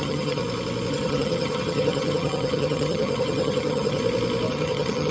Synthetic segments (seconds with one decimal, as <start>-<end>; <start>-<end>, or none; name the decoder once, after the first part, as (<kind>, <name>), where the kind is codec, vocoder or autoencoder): 0.0-0.4 (vocoder, HiFi-GAN); 0.9-4.0; 4.5-5.1